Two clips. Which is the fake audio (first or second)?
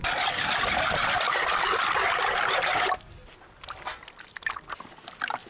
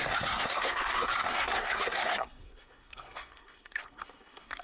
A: second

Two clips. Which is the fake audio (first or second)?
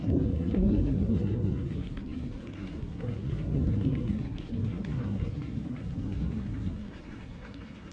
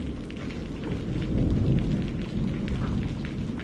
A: first